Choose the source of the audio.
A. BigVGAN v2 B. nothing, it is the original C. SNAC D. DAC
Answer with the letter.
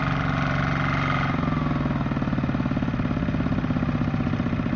B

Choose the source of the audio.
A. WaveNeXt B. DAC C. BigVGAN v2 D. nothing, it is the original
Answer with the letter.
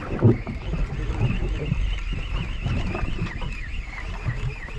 D